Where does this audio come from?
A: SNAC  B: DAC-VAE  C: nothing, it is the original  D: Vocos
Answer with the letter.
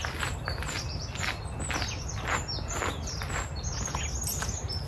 C